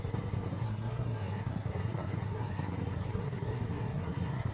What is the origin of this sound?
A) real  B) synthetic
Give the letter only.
B